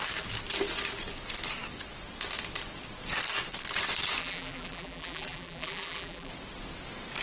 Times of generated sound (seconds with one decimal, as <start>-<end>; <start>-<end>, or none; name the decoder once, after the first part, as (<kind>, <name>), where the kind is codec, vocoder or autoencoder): 4.2-6.3 (vocoder, BigVGAN v2)